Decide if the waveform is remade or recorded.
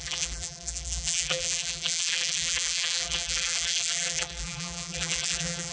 remade